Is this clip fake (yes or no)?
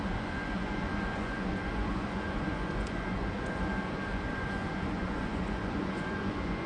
yes